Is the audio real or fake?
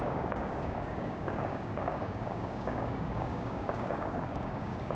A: fake